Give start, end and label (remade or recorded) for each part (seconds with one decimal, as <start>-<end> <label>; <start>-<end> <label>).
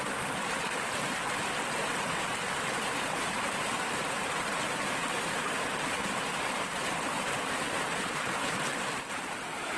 0.0-8.0 recorded; 8.0-8.5 remade; 8.5-9.8 recorded